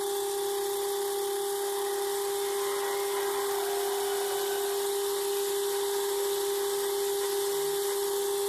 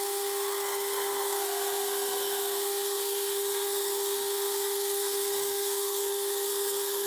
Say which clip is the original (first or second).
first